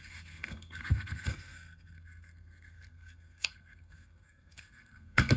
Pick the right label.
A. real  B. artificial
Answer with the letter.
B